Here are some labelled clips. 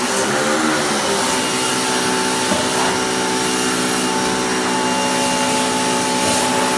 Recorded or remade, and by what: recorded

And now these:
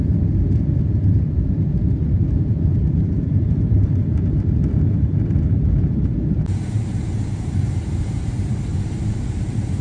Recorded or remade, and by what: remade, vocoder, BigVGAN v2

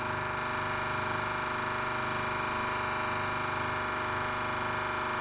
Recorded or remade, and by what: recorded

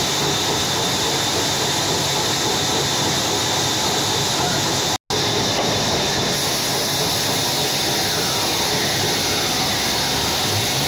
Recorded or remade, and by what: recorded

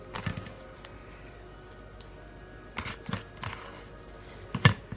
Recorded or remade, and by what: recorded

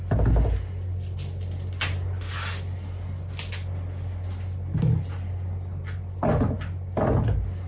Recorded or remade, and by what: recorded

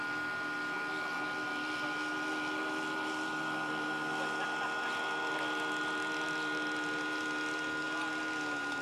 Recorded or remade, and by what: recorded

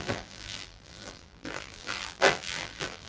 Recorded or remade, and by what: remade, vocoder, BigVGAN v2